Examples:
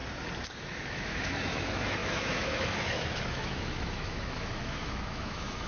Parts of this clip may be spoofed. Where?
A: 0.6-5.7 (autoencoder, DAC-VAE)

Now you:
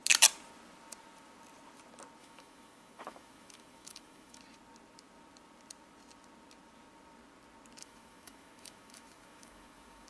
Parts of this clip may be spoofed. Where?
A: 2.2-4.4 (autoencoder, DAC-VAE); 7.8-10.1

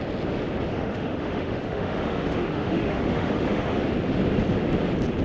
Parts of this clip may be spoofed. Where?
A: 0.7-3.8 (autoencoder, DAC-VAE)